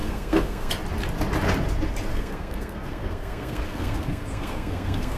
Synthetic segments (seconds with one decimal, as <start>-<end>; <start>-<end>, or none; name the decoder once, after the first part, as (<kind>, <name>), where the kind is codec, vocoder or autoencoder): 0.0-0.7 (codec, SNAC); 2.1-5.2